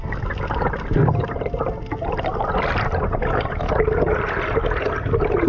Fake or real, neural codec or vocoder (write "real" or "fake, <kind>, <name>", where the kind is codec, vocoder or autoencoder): real